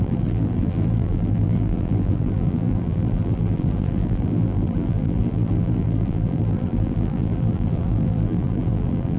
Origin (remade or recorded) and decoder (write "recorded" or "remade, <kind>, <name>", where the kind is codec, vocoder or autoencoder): remade, vocoder, BigVGAN v2